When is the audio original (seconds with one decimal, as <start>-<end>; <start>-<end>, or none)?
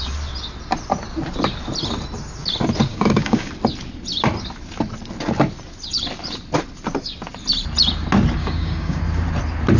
0.0-2.9; 3.5-8.4; 9.0-9.8